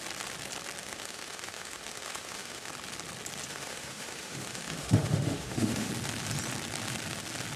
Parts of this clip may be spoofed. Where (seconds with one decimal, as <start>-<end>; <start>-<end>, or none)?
0.8-2.7; 3.5-5.9